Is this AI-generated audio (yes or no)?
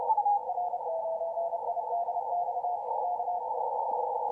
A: no